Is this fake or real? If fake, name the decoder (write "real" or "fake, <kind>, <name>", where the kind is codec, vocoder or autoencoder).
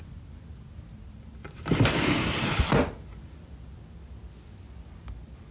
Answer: real